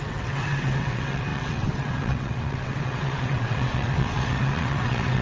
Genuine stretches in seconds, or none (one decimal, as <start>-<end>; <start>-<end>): none